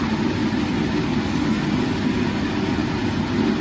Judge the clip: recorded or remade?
recorded